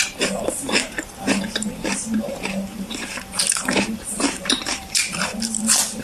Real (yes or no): no